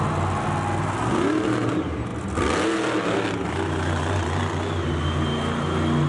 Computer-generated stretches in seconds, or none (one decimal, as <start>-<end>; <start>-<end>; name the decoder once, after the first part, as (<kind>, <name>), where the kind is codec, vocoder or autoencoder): none